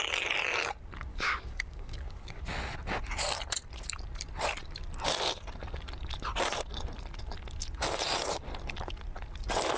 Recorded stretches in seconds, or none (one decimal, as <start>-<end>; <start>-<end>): 0.0-1.1; 2.4-9.8